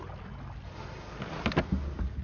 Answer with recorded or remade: recorded